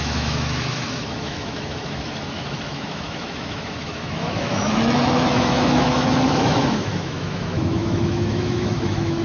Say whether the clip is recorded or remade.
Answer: remade